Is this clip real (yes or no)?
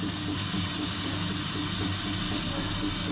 yes